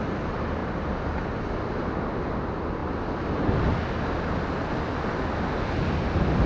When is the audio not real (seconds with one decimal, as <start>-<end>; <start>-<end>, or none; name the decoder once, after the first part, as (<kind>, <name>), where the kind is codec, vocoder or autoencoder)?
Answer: none